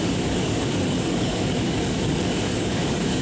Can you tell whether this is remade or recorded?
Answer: remade